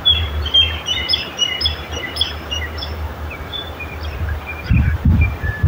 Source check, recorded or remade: remade